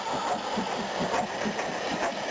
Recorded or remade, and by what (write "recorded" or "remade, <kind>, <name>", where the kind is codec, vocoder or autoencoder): recorded